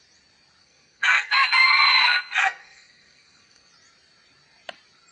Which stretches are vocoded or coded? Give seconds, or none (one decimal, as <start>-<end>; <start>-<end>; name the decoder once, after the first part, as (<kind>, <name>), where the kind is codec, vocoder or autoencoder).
0.6-3.7 (codec, SNAC)